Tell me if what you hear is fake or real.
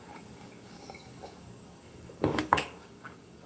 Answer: fake